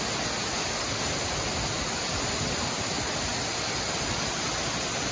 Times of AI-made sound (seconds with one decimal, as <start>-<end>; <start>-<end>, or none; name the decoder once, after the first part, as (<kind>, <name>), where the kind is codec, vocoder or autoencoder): none